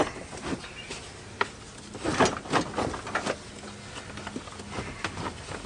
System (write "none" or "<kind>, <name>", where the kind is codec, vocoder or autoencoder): none